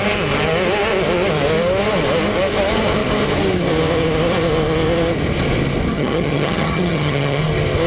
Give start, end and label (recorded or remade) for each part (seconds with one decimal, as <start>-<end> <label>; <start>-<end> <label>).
0.0-5.9 recorded; 5.9-7.4 remade; 7.4-7.9 recorded